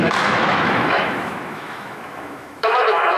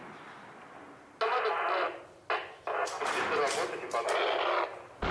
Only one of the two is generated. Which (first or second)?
first